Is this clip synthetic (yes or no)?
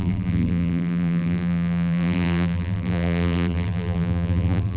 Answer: yes